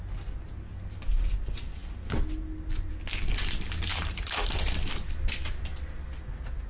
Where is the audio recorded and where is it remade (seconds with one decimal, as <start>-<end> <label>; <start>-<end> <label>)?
0.0-3.9 recorded; 3.9-5.6 remade; 5.6-6.7 recorded